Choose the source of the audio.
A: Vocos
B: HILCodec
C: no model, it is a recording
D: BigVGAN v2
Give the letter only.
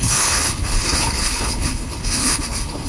B